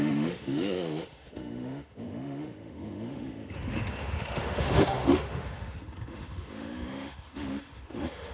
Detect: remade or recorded remade